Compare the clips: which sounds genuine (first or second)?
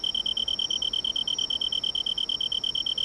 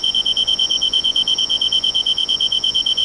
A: first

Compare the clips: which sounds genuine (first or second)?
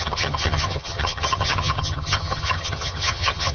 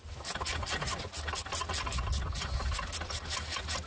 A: second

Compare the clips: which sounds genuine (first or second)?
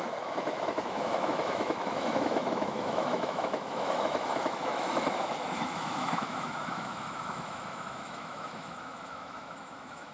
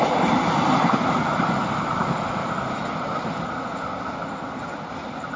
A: second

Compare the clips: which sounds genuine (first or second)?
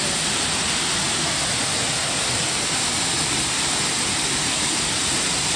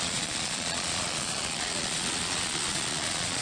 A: first